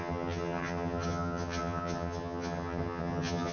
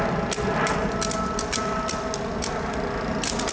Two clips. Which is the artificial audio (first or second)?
first